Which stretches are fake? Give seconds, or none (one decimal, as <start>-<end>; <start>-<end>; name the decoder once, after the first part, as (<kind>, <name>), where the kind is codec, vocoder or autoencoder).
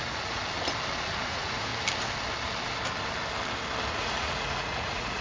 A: 0.0-0.4 (vocoder, Vocos); 1.1-1.7; 3.9-5.2